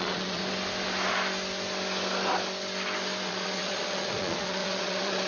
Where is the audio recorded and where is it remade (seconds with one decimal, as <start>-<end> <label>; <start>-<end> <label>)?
0.0-0.4 remade; 0.4-3.3 recorded; 3.3-5.3 remade